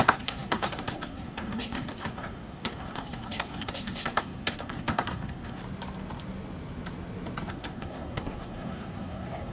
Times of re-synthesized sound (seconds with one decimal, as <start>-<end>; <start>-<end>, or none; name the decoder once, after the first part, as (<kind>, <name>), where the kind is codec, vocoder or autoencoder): 0.0-5.6 (codec, SNAC); 7.5-9.5